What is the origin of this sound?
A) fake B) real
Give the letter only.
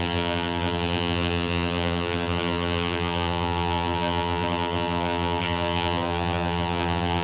A